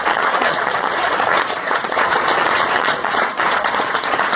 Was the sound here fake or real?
fake